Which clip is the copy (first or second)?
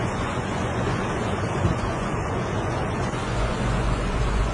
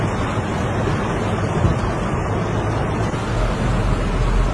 first